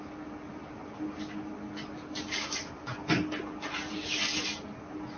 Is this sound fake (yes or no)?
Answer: no